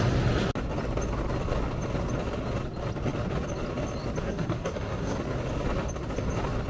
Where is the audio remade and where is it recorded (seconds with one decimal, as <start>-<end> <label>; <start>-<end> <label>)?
0.0-4.2 recorded; 4.2-5.2 remade; 5.2-6.7 recorded